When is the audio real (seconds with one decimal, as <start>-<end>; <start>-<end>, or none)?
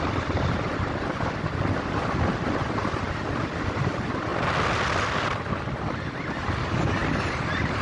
0.0-7.8